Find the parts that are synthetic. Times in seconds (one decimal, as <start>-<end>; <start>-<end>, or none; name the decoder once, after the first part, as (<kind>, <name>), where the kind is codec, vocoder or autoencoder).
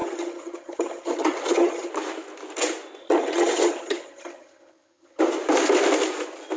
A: 0.0-1.9 (vocoder, HiFi-GAN); 3.0-5.2